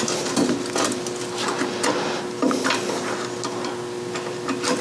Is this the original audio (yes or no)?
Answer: yes